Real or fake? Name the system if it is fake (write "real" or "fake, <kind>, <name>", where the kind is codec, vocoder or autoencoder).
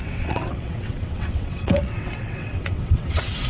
fake, vocoder, WaveNeXt